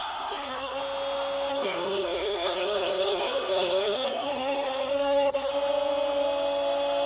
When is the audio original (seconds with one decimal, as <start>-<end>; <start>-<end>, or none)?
0.8-1.5; 5.5-7.1